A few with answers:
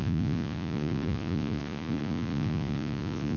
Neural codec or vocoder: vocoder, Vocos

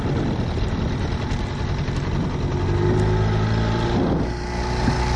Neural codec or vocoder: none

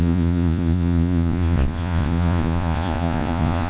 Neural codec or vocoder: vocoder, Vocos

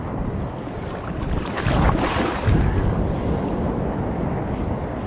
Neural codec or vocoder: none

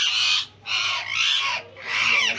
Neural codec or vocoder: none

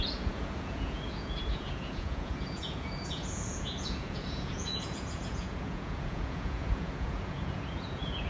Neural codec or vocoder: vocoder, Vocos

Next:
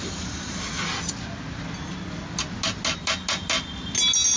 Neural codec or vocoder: none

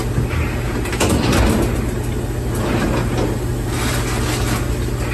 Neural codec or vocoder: none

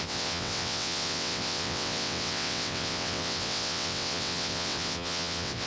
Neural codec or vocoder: vocoder, WaveNeXt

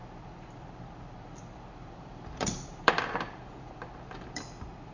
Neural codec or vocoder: vocoder, BigVGAN v2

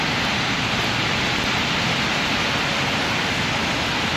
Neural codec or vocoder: none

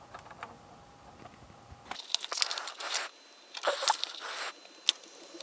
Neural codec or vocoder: none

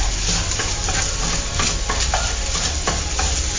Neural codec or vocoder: none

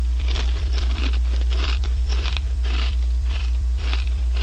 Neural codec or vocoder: vocoder, BigVGAN v2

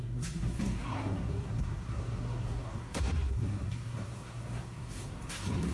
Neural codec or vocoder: codec, SNAC